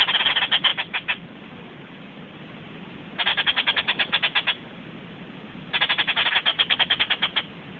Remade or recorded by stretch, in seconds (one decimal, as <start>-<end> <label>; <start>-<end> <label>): 0.0-3.3 recorded; 3.3-4.2 remade; 4.2-6.5 recorded; 6.5-7.1 remade; 7.1-7.8 recorded